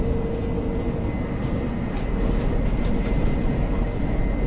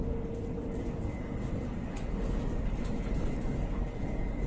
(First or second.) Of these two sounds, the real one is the first